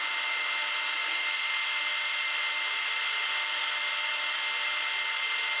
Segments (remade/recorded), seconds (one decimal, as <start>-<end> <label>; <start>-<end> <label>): 0.0-1.0 recorded; 1.0-4.4 remade; 4.4-5.6 recorded